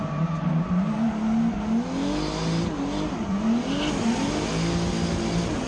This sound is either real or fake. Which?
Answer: real